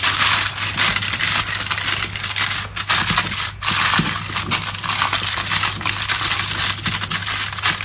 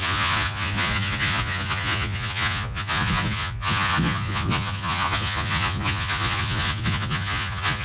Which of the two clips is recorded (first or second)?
first